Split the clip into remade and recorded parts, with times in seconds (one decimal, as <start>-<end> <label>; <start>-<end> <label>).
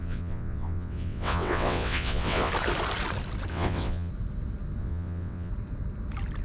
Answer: 0.0-2.5 remade; 2.5-3.5 recorded; 3.5-4.1 remade; 4.1-4.8 recorded; 4.8-5.5 remade; 5.5-6.4 recorded